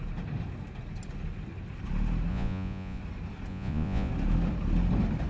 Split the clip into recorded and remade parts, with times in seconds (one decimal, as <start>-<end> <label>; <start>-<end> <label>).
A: 0.0-2.3 recorded; 2.3-3.0 remade; 3.0-3.5 recorded; 3.5-4.1 remade; 4.1-5.3 recorded